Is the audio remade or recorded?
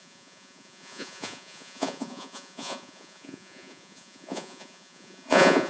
remade